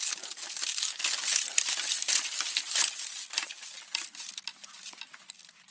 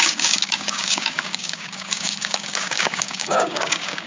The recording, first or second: first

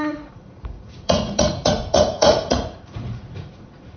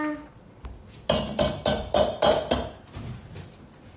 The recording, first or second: second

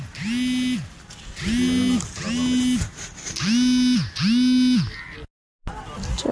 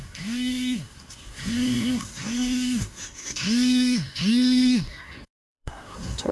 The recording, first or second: first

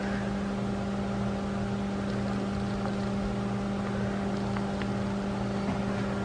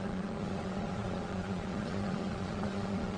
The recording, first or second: first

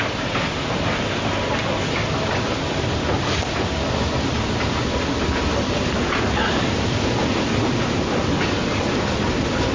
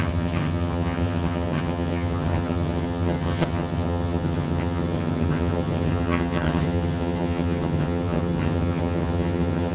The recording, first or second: first